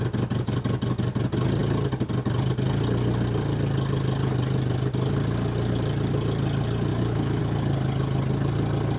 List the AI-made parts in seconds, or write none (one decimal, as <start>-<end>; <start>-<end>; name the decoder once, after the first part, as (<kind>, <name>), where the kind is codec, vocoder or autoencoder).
6.9-7.4 (autoencoder, DAC-VAE)